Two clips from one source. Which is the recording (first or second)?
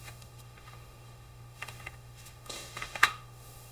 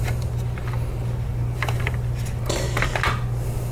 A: second